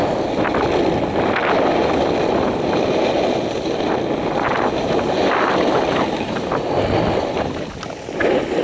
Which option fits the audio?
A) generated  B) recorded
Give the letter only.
B